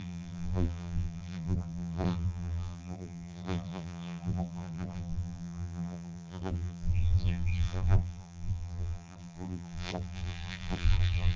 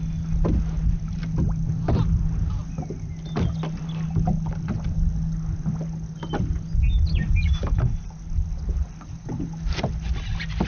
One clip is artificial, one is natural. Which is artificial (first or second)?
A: first